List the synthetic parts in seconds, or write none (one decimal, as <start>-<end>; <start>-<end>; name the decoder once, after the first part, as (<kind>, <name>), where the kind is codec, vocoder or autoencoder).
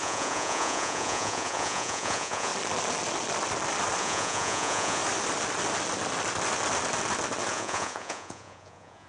0.0-2.5 (vocoder, Vocos); 4.0-5.0; 7.5-9.1